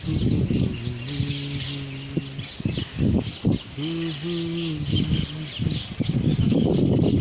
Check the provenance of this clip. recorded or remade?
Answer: recorded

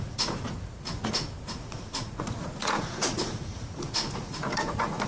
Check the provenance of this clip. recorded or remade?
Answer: remade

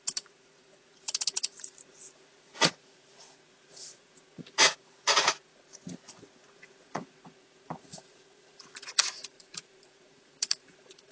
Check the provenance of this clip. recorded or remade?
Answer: remade